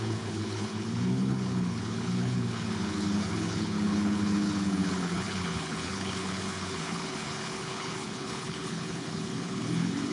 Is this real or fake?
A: fake